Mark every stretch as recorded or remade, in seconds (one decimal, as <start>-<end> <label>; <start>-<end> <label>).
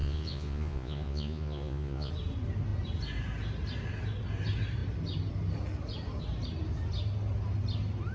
0.0-2.1 remade; 2.1-8.1 recorded